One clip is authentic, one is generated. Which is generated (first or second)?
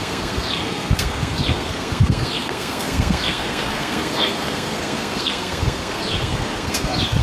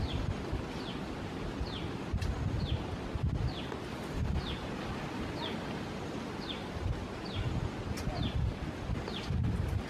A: first